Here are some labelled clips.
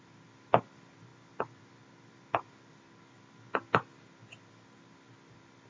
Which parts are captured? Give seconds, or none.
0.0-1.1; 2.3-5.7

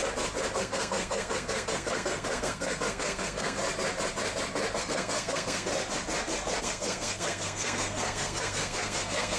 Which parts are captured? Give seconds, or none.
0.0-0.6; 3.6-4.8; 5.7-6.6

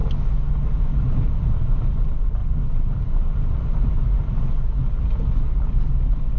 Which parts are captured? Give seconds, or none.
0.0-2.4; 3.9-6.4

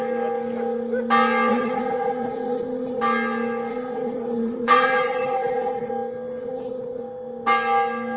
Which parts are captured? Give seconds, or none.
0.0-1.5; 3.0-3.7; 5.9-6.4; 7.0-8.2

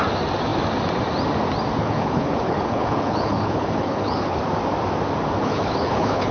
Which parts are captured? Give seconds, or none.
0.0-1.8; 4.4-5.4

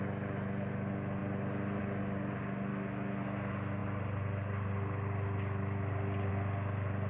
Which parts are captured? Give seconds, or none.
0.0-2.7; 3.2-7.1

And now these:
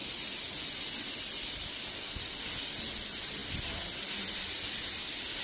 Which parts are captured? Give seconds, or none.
0.0-2.2; 3.4-4.2

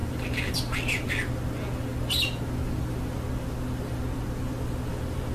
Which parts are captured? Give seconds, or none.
1.3-5.3